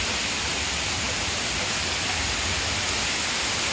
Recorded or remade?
recorded